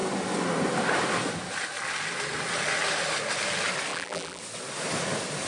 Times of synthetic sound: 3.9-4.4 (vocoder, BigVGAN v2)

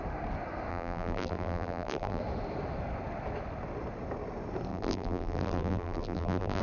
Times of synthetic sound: 0.7-2.2 (vocoder, BigVGAN v2); 4.7-6.6

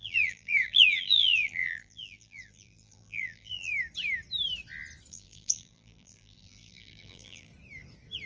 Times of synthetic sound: 0.0-3.7 (vocoder, BigVGAN v2); 5.1-7.5